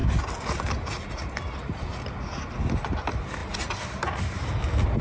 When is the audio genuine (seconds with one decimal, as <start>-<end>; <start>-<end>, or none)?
0.0-5.0

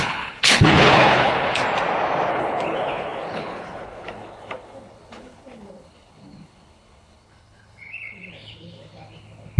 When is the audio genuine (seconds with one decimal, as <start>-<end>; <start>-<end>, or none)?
1.6-2.3

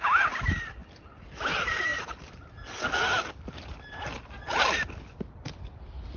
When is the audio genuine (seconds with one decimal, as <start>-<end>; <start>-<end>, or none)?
0.0-6.2

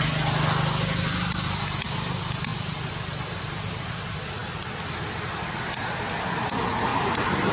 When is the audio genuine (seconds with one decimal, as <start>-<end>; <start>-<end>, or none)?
0.0-2.5; 3.9-6.9

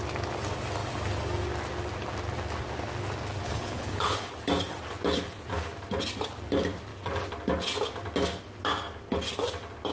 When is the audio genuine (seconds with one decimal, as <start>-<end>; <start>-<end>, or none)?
0.0-3.4; 4.4-9.9